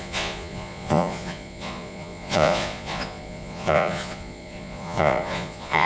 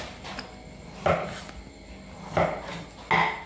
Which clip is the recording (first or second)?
second